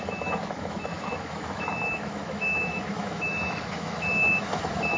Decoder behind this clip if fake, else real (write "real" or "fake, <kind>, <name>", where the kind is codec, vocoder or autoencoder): fake, autoencoder, DAC-VAE